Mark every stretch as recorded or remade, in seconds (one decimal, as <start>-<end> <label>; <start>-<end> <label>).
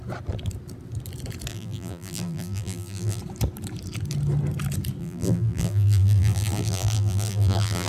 0.0-1.5 recorded; 1.5-3.2 remade; 3.2-5.0 recorded; 5.0-7.9 remade